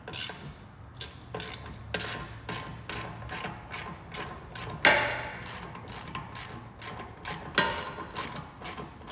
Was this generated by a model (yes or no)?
no